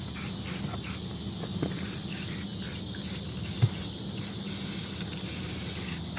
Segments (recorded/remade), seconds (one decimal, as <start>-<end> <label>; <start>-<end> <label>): 0.0-6.2 recorded